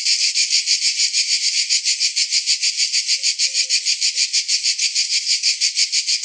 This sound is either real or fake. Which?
fake